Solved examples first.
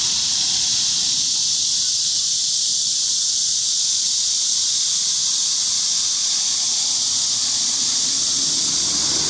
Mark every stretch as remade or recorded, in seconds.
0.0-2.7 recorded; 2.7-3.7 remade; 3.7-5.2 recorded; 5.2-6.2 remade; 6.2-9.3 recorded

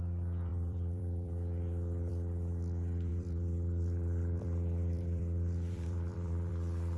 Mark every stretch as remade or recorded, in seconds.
0.0-0.5 recorded; 0.5-2.1 remade; 2.1-3.1 recorded; 3.1-6.5 remade; 6.5-7.0 recorded

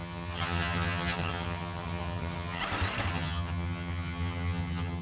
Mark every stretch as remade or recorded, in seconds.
0.0-2.6 remade; 2.6-3.1 recorded; 3.1-5.0 remade